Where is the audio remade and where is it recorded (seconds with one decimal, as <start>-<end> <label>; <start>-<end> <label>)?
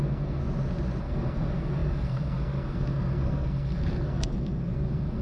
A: 0.0-0.4 remade; 0.4-1.0 recorded; 1.0-5.2 remade